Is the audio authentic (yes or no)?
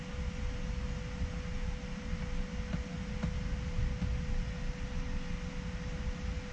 yes